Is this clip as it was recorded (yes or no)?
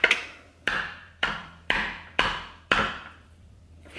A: no